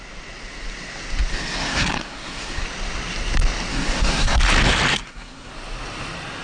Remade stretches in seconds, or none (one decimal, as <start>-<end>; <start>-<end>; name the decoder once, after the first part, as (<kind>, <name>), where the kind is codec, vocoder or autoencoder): 1.3-2.6 (codec, SNAC); 3.7-4.4; 4.9-5.5